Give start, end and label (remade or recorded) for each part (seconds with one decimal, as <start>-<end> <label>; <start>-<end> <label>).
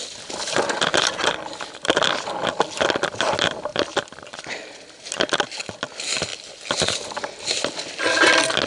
0.0-0.9 recorded; 0.9-2.3 remade; 2.3-3.7 recorded; 3.7-4.4 remade; 4.4-6.3 recorded; 6.3-7.4 remade; 7.4-8.7 recorded